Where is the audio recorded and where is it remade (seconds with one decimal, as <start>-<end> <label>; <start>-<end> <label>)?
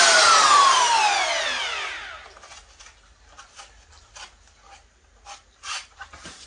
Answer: 0.0-0.9 remade; 0.9-4.7 recorded; 4.7-6.5 remade